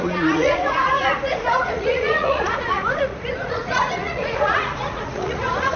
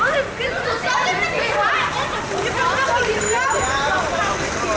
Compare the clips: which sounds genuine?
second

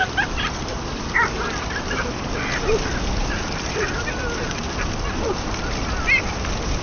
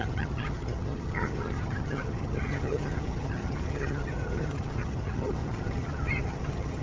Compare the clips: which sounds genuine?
first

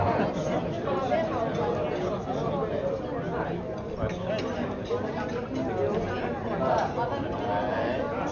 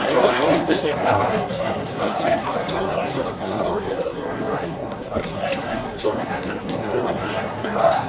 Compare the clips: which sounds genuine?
first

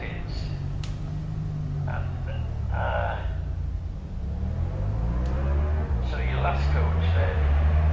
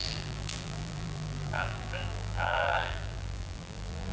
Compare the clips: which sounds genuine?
first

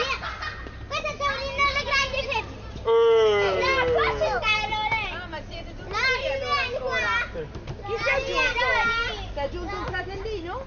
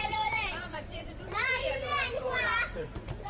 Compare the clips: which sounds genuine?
first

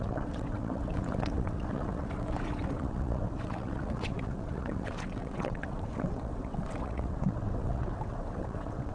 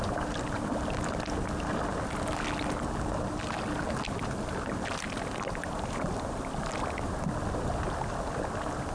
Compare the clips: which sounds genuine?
second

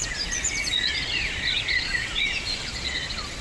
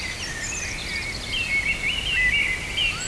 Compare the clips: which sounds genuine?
second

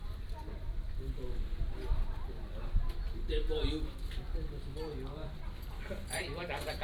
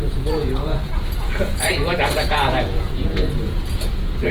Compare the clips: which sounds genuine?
first